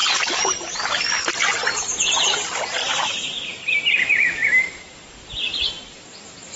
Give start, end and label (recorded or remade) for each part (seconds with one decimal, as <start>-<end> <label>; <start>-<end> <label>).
0.0-1.6 remade; 1.6-6.6 recorded

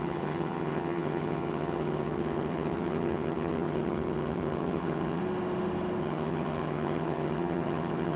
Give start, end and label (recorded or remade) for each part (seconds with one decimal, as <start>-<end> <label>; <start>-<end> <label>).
0.0-5.2 remade; 5.2-6.0 recorded; 6.0-8.2 remade

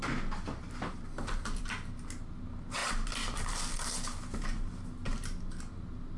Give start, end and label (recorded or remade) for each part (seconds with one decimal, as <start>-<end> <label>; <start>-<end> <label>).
0.0-6.2 recorded

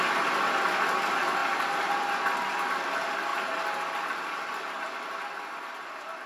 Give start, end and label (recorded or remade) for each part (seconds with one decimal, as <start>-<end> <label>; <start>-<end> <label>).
0.0-6.3 recorded

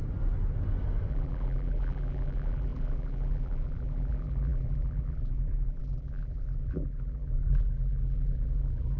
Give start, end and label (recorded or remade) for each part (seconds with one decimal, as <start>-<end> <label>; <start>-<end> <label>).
0.0-1.1 recorded; 1.1-9.0 remade

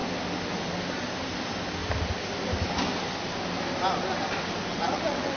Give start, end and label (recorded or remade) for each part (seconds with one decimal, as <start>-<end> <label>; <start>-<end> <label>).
0.0-4.7 recorded; 4.7-5.4 remade

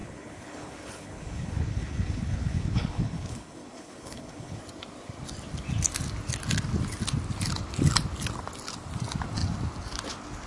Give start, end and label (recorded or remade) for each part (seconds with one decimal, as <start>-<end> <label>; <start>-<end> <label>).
0.0-4.6 remade; 4.6-10.5 recorded